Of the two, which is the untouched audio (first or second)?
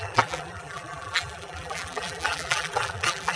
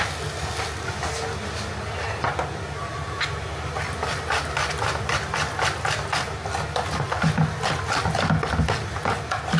second